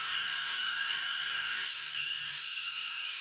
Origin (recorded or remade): remade